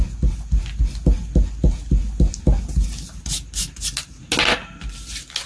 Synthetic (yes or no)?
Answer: no